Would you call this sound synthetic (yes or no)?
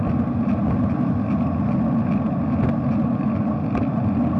no